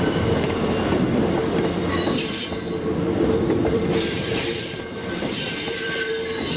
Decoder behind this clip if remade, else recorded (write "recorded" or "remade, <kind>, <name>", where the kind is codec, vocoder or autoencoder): remade, vocoder, BigVGAN v2